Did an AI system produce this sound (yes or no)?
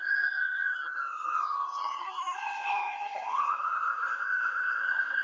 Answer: yes